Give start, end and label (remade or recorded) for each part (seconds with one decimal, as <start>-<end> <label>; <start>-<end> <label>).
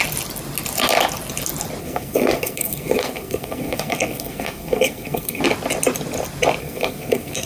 0.0-1.8 recorded; 1.8-5.4 remade; 5.4-6.6 recorded; 6.6-7.5 remade